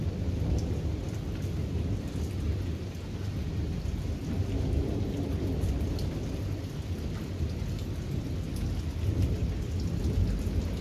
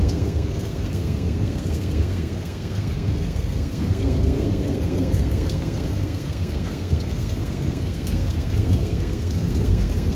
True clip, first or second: first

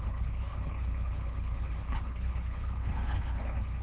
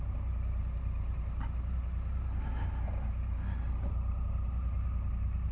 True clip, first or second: second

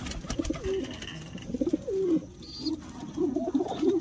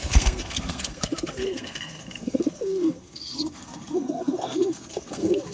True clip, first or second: first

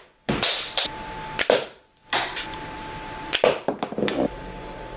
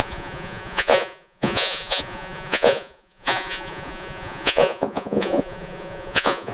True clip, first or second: first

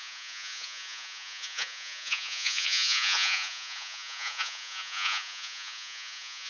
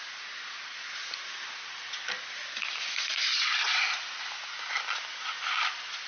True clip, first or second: second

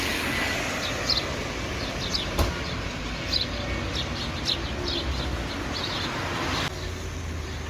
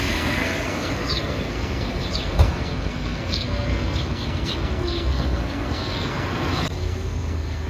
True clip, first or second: first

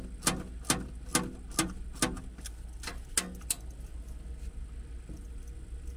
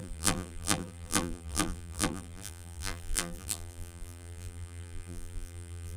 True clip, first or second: first